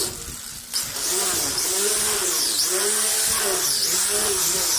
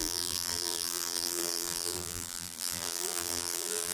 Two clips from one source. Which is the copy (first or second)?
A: second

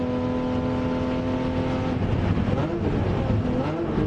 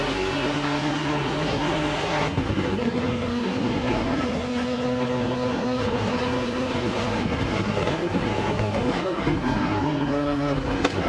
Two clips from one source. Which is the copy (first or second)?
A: second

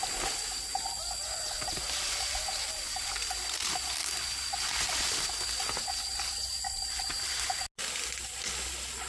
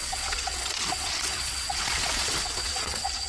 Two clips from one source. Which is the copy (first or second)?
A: second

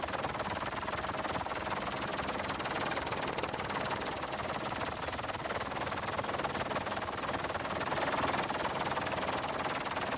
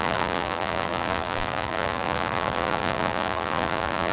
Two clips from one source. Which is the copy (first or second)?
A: second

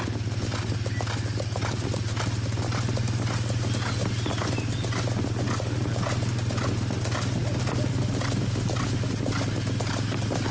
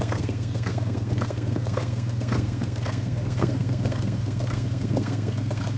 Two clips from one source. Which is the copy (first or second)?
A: second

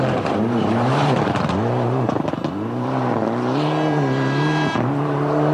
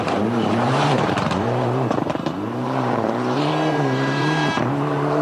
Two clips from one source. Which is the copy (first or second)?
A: second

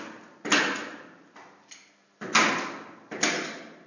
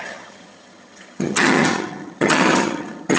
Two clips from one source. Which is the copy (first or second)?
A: second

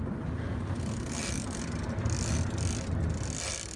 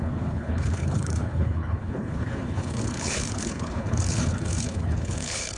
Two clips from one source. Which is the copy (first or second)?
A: second